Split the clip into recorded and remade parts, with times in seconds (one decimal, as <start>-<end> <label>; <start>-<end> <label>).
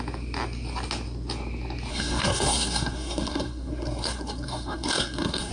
0.0-1.9 recorded; 1.9-5.5 remade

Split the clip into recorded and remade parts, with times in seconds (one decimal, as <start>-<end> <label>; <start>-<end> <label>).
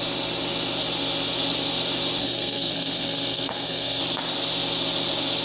0.0-2.2 recorded; 2.2-4.0 remade; 4.0-5.4 recorded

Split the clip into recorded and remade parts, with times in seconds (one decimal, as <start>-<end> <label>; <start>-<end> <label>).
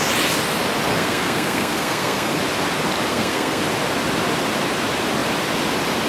0.0-0.9 recorded; 0.9-2.4 remade; 2.4-3.1 recorded; 3.1-3.6 remade; 3.6-6.1 recorded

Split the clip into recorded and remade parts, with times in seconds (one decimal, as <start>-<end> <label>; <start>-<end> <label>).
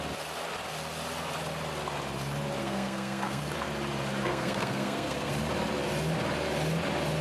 0.0-2.6 recorded; 2.6-3.4 remade; 3.4-4.2 recorded; 4.2-5.3 remade; 5.3-7.2 recorded